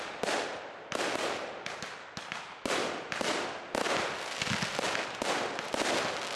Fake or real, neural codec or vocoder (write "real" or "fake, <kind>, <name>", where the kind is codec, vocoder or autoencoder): real